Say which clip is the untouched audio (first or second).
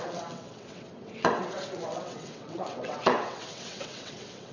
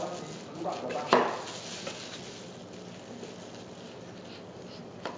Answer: second